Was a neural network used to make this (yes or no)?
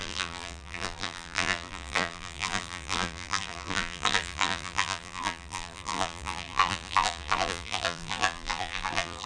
yes